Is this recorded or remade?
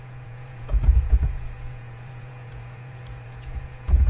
remade